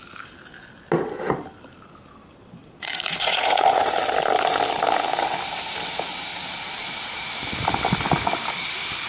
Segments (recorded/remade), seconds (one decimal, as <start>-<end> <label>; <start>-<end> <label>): 0.0-2.6 recorded; 2.6-3.9 remade; 3.9-9.1 recorded